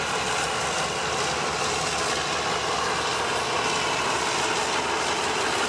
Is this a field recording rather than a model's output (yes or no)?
yes